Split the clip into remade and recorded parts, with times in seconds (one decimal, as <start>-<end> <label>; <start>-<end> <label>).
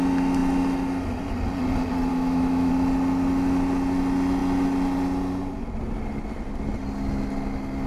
0.0-2.1 recorded; 2.1-2.7 remade; 2.7-7.9 recorded